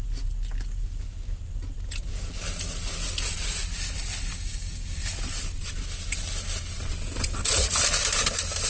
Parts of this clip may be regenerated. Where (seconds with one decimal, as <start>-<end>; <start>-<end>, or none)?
4.3-5.0